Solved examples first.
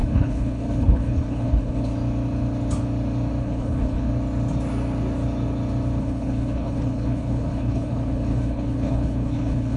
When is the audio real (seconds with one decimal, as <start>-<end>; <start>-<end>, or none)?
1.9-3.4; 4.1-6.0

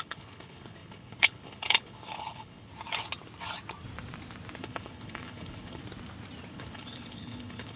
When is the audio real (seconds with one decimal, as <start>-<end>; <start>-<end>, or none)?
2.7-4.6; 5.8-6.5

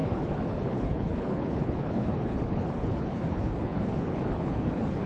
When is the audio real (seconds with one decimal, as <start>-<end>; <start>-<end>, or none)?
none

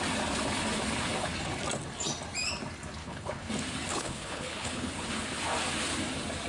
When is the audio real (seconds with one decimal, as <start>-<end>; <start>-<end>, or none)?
0.0-3.0; 3.5-3.9; 4.9-6.5